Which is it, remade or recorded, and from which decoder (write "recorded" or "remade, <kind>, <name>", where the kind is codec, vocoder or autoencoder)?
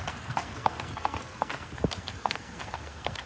remade, codec, SNAC